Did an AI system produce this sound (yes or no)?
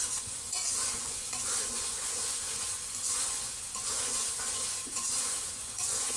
yes